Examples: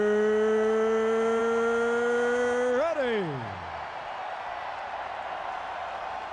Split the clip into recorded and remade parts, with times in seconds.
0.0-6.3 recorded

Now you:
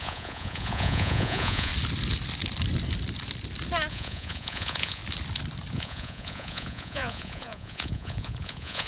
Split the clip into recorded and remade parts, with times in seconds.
0.0-1.7 remade; 1.7-3.9 recorded; 3.9-5.0 remade; 5.0-5.7 recorded; 5.7-8.9 remade

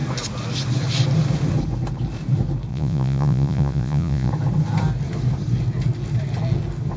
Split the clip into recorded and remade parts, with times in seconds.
0.0-2.7 recorded; 2.7-4.3 remade; 4.3-7.0 recorded